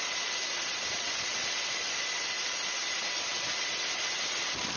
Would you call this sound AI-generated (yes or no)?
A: yes